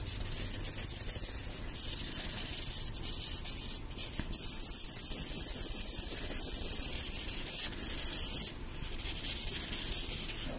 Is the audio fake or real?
real